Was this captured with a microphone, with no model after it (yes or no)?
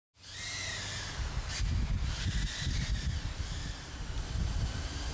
no